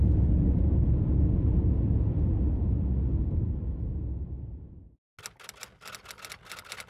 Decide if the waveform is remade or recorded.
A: recorded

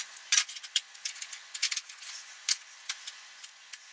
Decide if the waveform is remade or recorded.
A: remade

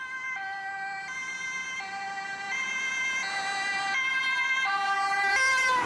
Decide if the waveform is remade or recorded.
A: remade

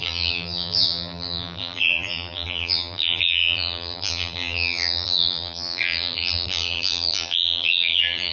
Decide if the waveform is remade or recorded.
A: remade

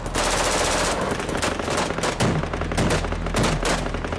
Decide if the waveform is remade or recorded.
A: recorded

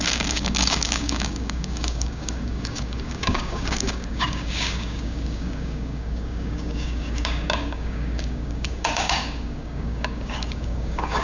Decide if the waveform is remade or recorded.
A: remade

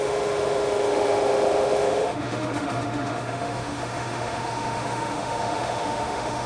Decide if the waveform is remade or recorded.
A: remade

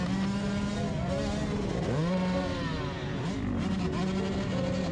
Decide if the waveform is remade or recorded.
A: recorded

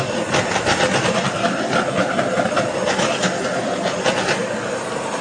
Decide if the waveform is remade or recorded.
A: recorded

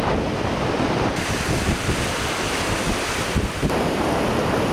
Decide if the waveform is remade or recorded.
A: recorded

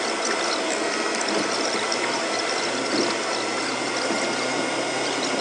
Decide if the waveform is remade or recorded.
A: recorded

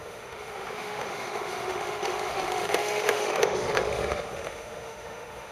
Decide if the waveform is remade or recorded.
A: remade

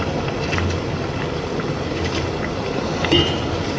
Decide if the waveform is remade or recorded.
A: recorded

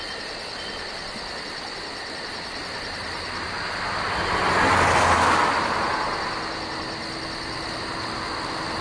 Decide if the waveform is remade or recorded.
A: recorded